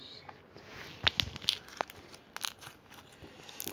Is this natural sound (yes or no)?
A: yes